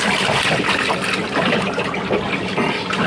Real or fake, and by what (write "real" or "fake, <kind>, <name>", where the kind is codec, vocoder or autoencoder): real